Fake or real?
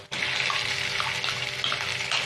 real